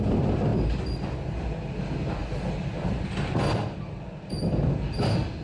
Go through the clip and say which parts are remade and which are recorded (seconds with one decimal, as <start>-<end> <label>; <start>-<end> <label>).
0.0-5.4 recorded